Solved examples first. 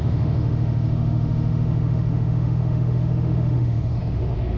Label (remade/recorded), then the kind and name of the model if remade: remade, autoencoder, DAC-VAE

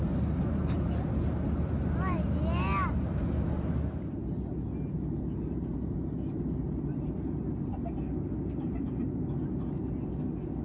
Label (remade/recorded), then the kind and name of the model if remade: recorded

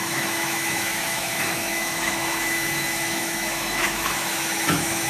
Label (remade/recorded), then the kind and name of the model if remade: remade, autoencoder, DAC-VAE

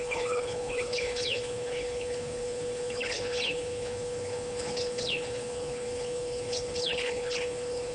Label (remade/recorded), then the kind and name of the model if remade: remade, codec, HILCodec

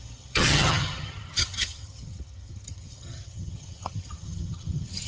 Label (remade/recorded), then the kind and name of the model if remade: remade, vocoder, HiFi-GAN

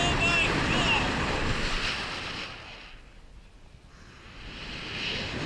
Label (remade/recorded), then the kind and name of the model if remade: recorded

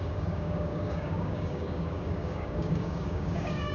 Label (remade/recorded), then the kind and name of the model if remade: remade, codec, DAC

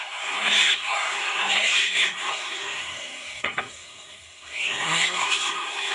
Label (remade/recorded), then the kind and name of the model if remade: remade, codec, SNAC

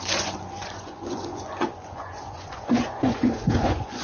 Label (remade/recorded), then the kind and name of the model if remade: remade, vocoder, Vocos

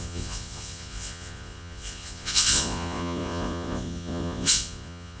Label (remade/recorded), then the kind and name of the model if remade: remade, vocoder, Vocos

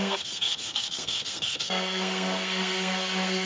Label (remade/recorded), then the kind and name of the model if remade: remade, codec, SNAC